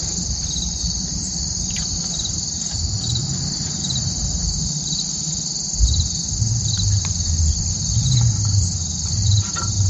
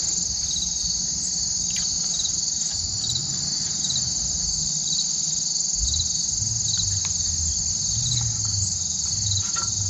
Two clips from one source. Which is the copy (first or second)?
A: first